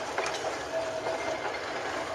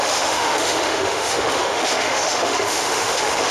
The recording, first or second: first